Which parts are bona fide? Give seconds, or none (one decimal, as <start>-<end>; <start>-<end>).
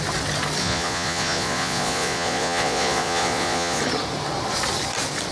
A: 0.0-0.6; 3.8-5.3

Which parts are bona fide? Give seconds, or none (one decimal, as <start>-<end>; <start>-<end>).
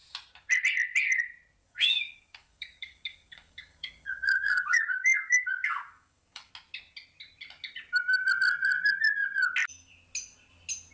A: 0.0-1.6; 6.5-10.9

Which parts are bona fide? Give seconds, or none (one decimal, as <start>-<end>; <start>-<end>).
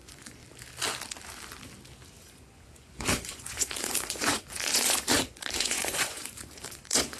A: 0.4-2.2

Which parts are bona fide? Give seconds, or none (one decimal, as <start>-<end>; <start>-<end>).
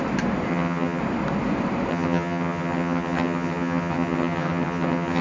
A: 0.0-0.5; 1.0-1.9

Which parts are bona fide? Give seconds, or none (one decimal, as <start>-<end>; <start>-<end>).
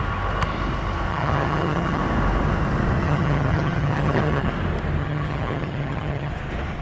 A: 0.0-1.1; 2.0-3.0; 4.5-5.0; 6.3-6.8